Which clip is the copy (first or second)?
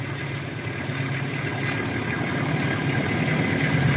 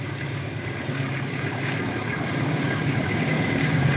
second